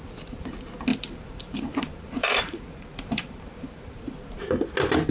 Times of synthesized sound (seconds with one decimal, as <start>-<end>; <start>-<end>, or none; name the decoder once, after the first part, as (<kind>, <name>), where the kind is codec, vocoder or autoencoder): 0.9-4.0 (vocoder, BigVGAN v2)